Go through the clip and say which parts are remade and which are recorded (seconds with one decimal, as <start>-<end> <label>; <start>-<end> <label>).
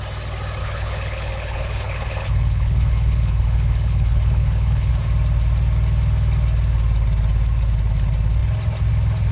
0.0-0.6 recorded; 0.6-4.9 remade; 4.9-9.3 recorded